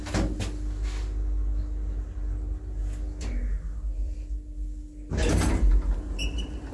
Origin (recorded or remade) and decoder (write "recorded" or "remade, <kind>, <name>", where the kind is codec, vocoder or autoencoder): recorded